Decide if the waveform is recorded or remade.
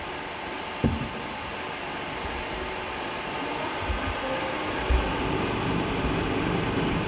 recorded